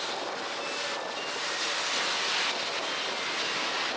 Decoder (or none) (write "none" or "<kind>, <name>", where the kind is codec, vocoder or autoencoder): none